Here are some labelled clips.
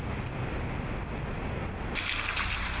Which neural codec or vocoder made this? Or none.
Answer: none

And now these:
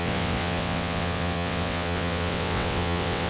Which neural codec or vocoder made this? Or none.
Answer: vocoder, WaveNeXt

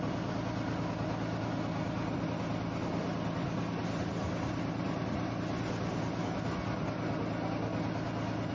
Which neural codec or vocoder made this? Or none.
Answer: none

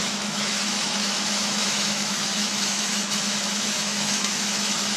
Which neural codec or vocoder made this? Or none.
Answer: autoencoder, DAC-VAE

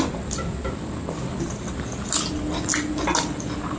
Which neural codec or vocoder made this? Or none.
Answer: none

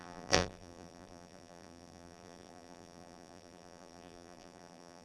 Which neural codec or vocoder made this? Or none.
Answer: vocoder, BigVGAN v2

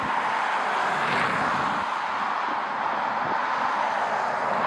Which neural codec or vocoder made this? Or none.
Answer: none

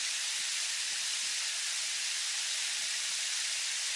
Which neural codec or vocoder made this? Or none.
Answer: none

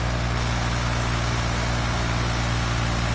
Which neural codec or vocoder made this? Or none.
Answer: none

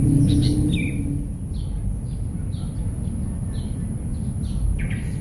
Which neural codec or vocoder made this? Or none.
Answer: none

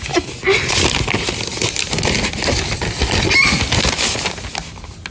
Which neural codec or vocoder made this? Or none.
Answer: none